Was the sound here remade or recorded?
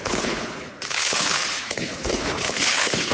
remade